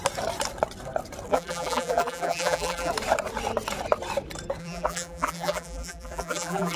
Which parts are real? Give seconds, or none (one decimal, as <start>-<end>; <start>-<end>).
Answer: 0.0-1.3; 2.9-4.6

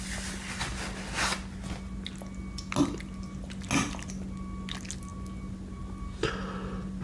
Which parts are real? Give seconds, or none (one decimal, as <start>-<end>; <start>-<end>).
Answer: 0.0-7.0

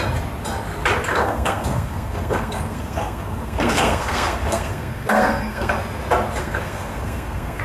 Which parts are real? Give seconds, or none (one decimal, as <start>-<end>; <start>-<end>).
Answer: 0.0-1.1; 5.7-6.4

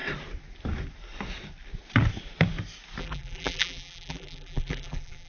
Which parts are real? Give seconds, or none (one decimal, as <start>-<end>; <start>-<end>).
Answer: 0.0-3.0

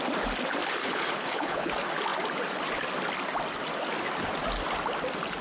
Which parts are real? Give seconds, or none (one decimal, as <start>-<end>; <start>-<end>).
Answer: 0.0-0.8; 1.7-5.4

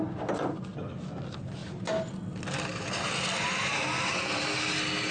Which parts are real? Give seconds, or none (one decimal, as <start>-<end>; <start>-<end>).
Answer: 0.0-5.1